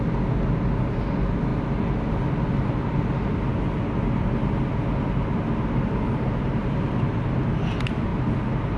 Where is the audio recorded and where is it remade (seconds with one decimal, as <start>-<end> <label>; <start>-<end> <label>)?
0.0-8.8 recorded